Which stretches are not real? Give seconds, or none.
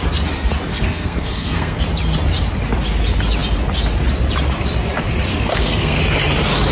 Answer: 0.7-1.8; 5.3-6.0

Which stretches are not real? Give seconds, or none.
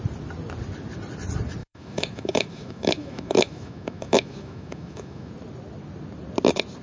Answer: 1.6-5.3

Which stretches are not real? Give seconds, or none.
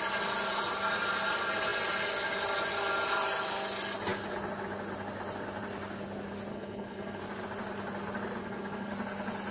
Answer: 6.5-7.2; 8.4-8.9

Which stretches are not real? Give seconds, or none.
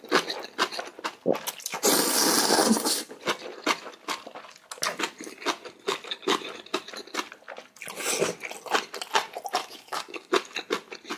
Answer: 2.6-3.2; 9.6-10.3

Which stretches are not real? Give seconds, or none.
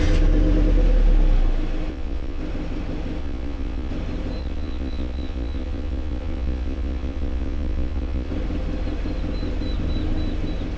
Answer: 1.9-2.4; 3.2-3.9; 4.4-8.3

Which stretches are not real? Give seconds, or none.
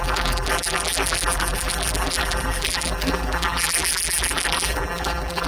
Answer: 0.0-5.5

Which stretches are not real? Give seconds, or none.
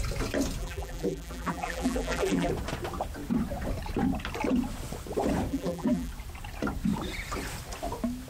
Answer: 0.6-2.5; 5.5-6.1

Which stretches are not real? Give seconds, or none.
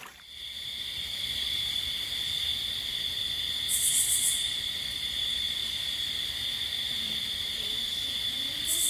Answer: 0.0-2.5; 3.5-8.9